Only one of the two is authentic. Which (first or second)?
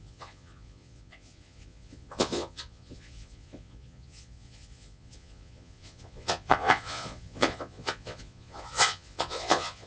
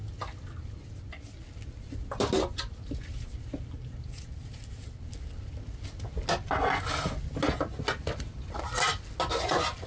second